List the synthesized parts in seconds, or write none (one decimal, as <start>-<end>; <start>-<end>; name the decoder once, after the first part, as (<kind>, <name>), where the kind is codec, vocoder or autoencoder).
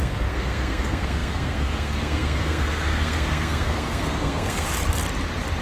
0.0-4.7 (codec, SNAC)